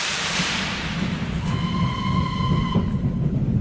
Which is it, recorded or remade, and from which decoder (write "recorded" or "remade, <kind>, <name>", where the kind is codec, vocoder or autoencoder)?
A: recorded